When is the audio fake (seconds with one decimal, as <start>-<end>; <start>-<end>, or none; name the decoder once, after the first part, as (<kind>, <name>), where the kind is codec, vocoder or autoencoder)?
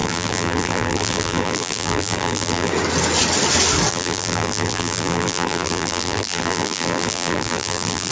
0.0-2.7 (vocoder, BigVGAN v2); 3.9-8.1